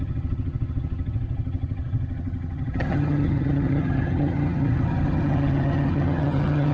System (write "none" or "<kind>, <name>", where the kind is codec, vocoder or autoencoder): vocoder, HiFi-GAN